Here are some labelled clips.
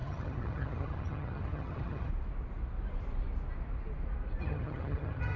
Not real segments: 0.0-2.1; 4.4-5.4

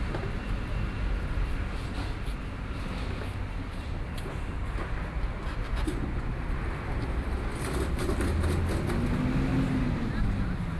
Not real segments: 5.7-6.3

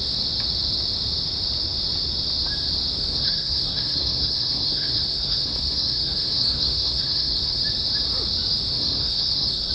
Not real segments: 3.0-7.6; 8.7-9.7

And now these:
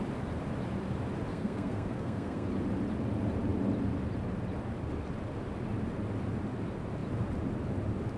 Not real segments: 1.3-2.5

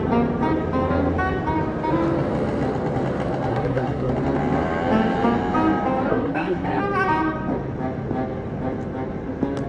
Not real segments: 3.5-4.1; 6.1-6.8

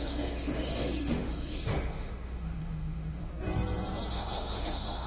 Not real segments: 0.0-3.3; 4.1-5.1

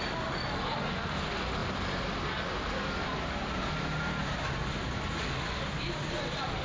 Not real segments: none